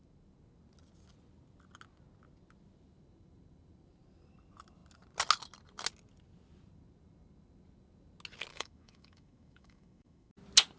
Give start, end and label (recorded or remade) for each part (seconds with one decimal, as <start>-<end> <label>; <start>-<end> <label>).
0.0-8.5 recorded; 8.5-10.3 remade; 10.3-10.8 recorded